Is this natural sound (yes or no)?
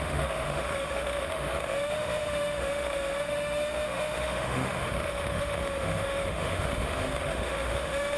no